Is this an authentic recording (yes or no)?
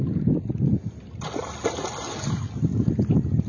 yes